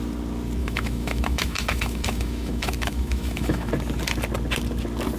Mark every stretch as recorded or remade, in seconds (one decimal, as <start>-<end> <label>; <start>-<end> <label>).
0.0-0.6 recorded; 0.6-3.7 remade; 3.7-5.2 recorded